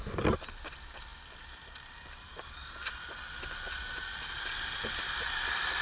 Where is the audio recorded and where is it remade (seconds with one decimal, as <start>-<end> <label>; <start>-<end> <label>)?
0.0-5.8 recorded